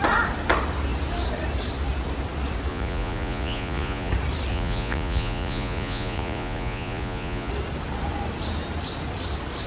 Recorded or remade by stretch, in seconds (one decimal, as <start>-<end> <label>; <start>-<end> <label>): 0.0-2.7 recorded; 2.7-4.1 remade; 4.1-4.5 recorded; 4.5-7.5 remade; 7.5-9.7 recorded